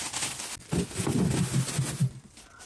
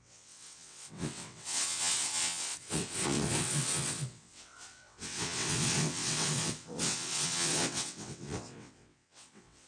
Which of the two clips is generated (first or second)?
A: second